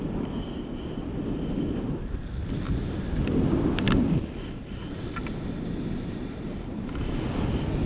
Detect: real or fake real